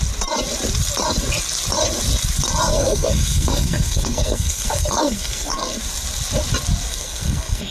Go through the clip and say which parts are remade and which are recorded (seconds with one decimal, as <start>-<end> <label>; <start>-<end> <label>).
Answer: 0.0-2.7 recorded; 2.7-5.8 remade; 5.8-6.9 recorded; 6.9-7.7 remade